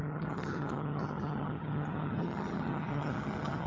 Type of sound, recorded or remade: remade